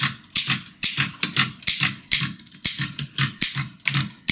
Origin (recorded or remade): recorded